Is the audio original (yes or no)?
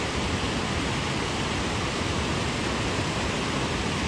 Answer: yes